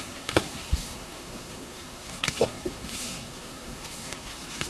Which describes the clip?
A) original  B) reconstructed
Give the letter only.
B